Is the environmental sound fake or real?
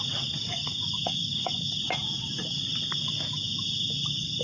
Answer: real